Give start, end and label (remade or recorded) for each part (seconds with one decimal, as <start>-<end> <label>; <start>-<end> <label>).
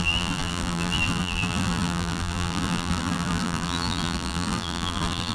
0.0-5.3 remade